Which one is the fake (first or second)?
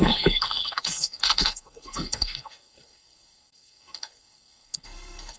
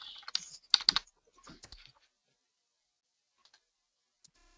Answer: first